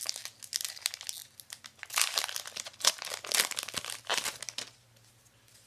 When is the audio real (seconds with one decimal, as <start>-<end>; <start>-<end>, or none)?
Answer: 0.0-5.7